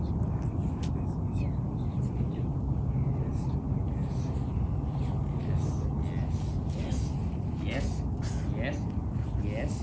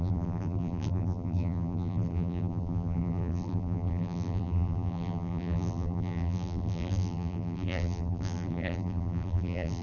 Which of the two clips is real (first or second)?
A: first